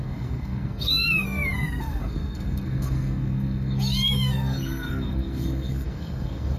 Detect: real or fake fake